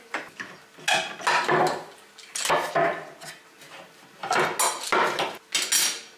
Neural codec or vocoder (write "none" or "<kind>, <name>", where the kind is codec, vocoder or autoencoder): none